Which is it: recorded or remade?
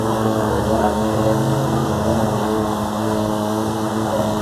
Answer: remade